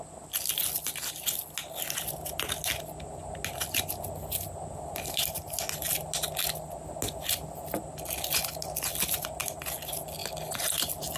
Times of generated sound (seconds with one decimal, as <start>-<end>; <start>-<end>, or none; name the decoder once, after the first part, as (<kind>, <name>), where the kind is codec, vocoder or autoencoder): none